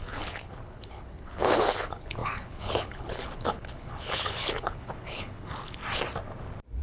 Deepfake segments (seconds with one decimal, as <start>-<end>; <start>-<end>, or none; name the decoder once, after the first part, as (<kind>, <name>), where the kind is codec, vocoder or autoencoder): 0.0-5.8 (codec, HILCodec)